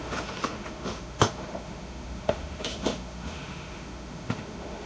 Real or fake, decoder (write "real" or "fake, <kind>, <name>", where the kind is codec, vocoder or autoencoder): fake, autoencoder, DAC-VAE